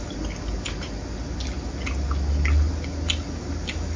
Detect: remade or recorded recorded